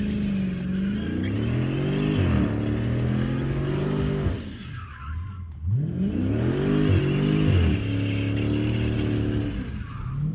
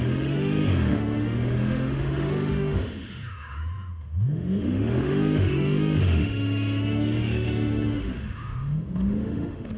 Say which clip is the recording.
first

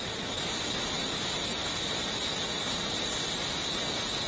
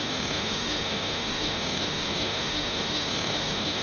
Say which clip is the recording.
first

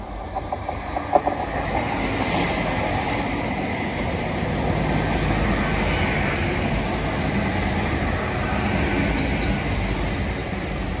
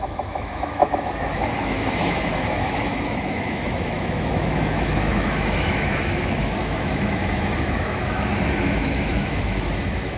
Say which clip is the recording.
first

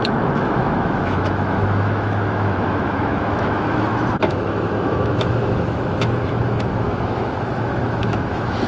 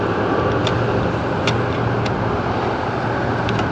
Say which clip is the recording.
second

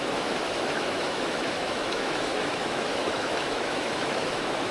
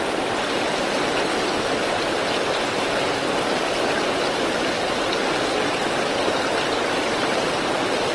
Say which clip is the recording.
second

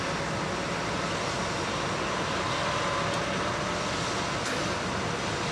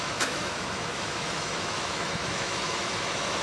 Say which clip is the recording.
first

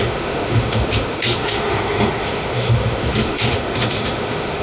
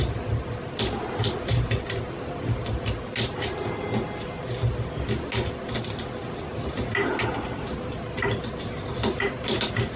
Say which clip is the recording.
second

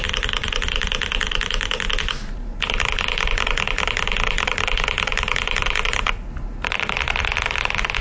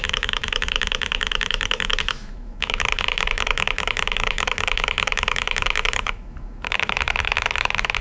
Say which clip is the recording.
first